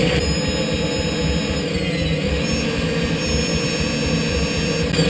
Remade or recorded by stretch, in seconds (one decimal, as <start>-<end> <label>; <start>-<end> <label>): 0.0-5.1 recorded